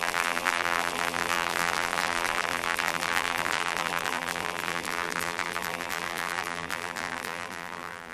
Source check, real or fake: fake